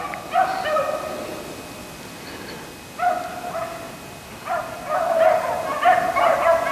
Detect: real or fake real